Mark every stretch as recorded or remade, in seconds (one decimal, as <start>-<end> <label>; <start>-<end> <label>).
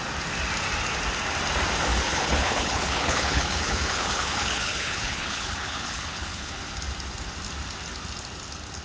0.0-1.9 recorded; 1.9-6.6 remade; 6.6-8.8 recorded